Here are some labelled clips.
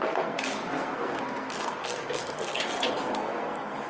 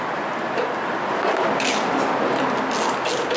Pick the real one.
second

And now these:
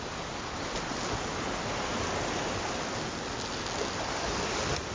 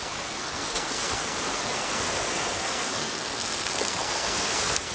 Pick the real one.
first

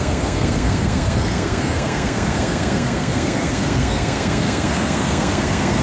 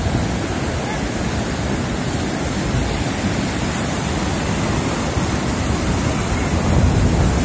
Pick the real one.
second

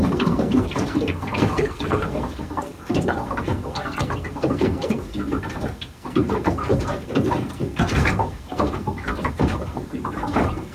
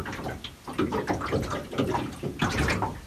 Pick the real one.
second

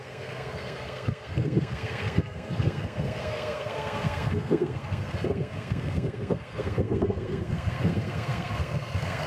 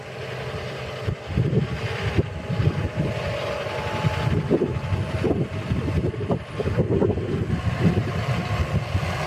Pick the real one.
second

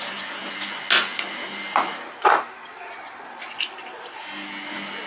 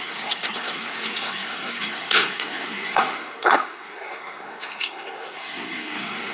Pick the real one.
first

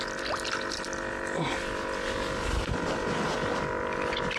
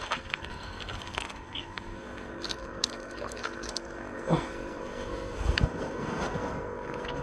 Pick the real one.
first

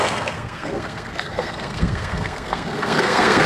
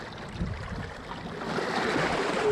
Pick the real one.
second